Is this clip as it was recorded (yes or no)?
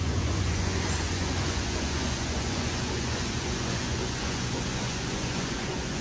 no